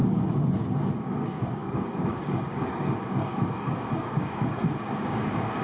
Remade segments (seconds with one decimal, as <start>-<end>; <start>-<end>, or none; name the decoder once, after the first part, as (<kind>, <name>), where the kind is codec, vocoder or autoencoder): 1.0-5.6 (codec, DAC)

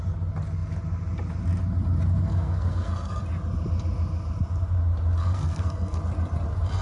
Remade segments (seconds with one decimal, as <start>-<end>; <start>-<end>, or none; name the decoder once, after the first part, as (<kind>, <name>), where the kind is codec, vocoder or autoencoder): 2.3-3.2 (codec, SNAC); 5.2-6.0